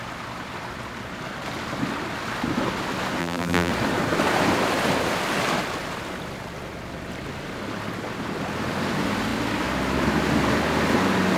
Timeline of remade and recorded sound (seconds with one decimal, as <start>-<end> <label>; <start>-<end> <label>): 0.0-3.2 recorded; 3.2-3.7 remade; 3.7-11.4 recorded

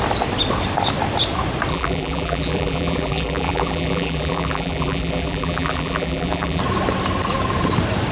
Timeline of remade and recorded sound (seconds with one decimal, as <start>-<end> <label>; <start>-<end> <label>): 0.0-1.7 recorded; 1.7-6.6 remade; 6.6-8.1 recorded